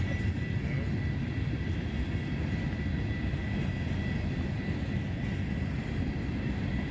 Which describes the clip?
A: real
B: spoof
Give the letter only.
A